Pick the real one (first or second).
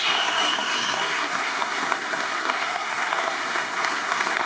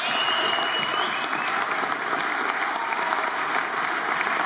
second